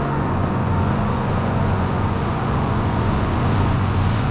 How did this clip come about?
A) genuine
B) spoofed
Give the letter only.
B